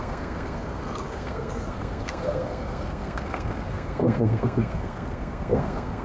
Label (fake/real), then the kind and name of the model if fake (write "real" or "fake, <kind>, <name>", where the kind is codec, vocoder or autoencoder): fake, codec, SNAC